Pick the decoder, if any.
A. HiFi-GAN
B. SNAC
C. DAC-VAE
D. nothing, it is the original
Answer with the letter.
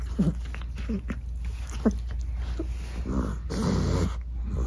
D